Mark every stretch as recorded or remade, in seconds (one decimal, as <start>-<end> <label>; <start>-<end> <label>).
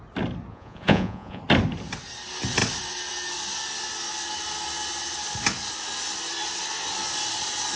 0.0-0.5 recorded; 0.5-1.4 remade; 1.4-7.8 recorded